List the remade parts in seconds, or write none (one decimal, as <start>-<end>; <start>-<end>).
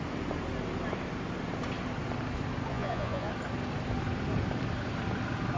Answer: 2.7-3.3